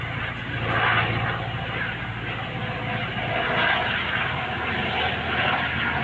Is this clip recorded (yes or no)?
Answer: yes